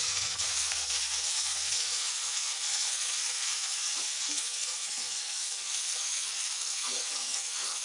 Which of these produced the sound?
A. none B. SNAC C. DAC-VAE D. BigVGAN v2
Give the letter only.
B